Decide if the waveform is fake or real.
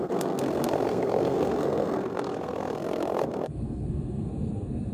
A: fake